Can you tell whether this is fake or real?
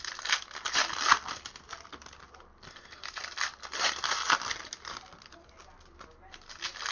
real